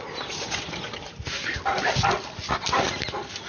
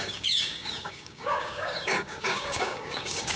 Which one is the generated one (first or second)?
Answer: second